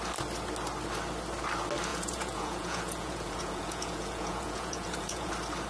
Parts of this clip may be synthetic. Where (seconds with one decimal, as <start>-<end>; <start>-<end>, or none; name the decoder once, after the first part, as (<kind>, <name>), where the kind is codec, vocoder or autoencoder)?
1.9-5.3 (vocoder, Vocos)